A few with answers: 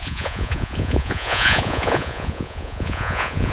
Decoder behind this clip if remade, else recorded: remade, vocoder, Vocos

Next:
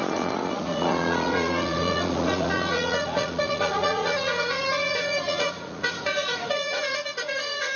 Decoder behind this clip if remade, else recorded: remade, vocoder, Vocos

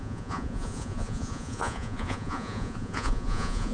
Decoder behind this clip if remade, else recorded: remade, vocoder, Vocos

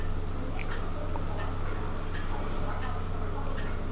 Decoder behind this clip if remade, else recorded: recorded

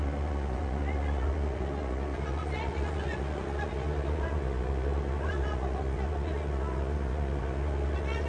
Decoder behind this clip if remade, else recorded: remade, vocoder, Vocos